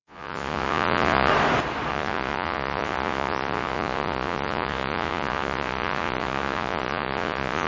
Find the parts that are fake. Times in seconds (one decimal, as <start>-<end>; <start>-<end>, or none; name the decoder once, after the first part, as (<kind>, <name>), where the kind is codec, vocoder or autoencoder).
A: 0.0-1.3 (vocoder, Vocos); 1.9-7.7